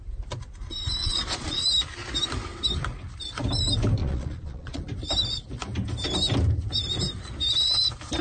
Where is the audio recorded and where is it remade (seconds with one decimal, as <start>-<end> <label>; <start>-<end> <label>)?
0.0-1.0 recorded; 1.0-1.6 remade; 1.6-4.0 recorded; 4.0-4.8 remade; 4.8-8.2 recorded